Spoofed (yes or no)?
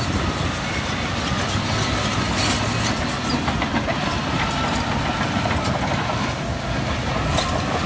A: no